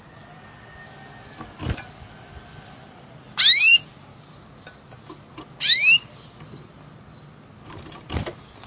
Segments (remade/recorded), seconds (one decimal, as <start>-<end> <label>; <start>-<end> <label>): 0.0-8.7 recorded